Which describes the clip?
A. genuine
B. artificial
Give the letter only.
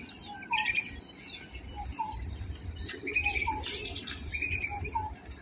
A